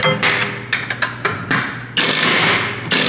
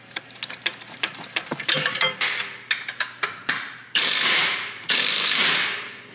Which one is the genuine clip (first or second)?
first